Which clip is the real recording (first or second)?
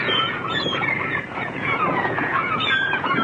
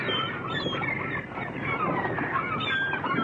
second